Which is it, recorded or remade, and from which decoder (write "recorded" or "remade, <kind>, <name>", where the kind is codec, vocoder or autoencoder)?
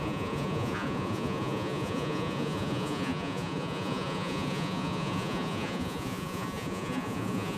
remade, vocoder, Vocos